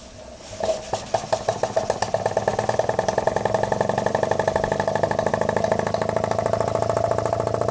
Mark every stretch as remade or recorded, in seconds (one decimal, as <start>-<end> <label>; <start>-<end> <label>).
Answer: 0.0-7.7 recorded